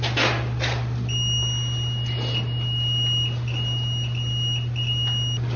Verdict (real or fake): real